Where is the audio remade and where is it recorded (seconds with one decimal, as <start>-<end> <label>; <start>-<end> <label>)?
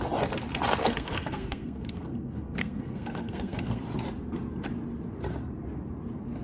0.0-0.8 recorded; 0.8-3.8 remade; 3.8-6.4 recorded